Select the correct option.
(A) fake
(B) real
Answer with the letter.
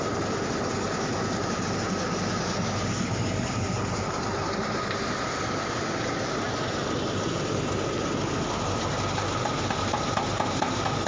B